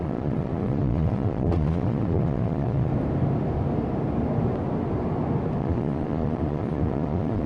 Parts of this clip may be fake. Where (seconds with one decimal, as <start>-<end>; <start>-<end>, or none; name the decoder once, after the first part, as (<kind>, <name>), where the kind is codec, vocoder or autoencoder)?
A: 0.0-2.9 (vocoder, Vocos); 5.6-7.5